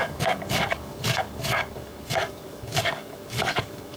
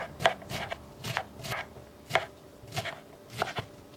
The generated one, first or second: first